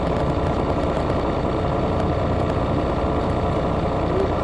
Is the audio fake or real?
real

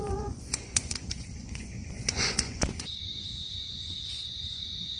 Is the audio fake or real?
fake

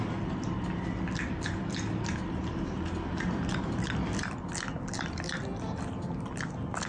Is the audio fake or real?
real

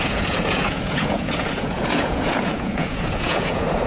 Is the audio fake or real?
fake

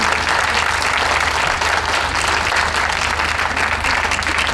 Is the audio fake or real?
real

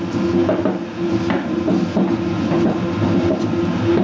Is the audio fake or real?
real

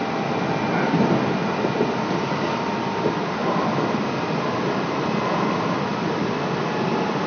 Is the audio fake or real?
real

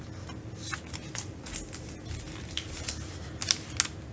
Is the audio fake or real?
real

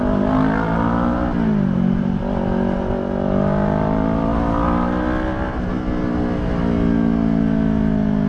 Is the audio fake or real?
real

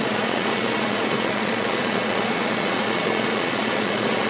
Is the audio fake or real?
fake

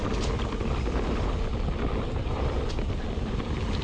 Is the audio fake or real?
real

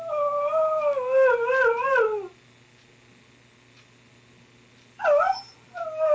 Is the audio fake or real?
real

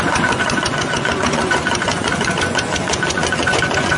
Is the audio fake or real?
fake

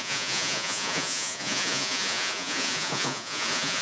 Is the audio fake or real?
fake